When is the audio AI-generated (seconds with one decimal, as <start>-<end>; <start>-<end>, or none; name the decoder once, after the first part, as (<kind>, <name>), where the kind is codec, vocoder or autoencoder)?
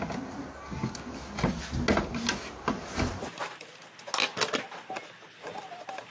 none